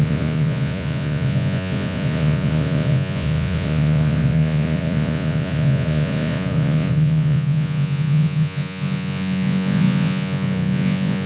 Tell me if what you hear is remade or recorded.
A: remade